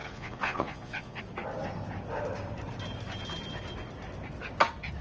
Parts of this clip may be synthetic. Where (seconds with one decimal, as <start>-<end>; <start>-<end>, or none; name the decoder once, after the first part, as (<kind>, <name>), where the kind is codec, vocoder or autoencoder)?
0.0-1.2 (vocoder, Vocos)